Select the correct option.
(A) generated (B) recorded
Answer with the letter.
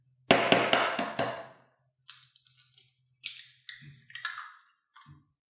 B